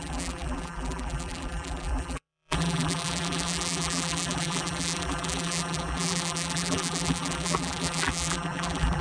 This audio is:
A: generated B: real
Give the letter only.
A